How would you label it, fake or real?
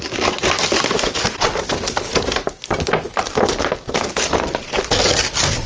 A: real